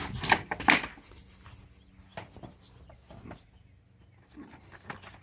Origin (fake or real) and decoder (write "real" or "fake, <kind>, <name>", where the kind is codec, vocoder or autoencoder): real